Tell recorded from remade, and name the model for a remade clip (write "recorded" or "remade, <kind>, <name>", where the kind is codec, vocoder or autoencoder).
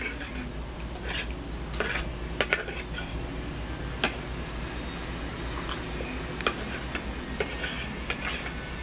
recorded